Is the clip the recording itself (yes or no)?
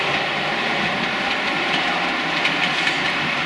yes